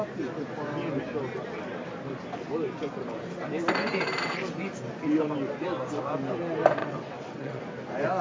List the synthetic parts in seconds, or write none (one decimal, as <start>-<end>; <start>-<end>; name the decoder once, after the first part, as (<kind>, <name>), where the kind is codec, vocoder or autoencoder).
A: 6.8-7.6 (vocoder, WaveNeXt)